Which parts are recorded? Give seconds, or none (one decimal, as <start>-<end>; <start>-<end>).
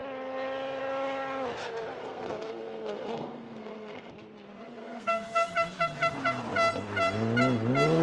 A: 0.0-2.0; 4.1-4.8; 5.5-8.0